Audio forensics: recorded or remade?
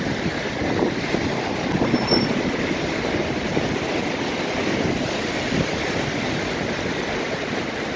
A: recorded